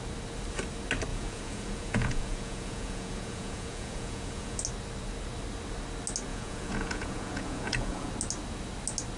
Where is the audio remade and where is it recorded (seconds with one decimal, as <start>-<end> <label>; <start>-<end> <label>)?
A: 0.0-1.1 recorded; 1.1-4.6 remade; 4.6-6.3 recorded; 6.3-8.1 remade; 8.1-9.2 recorded